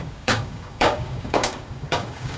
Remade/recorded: remade